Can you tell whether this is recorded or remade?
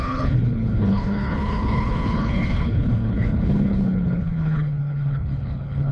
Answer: remade